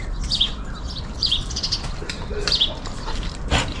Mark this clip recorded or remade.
remade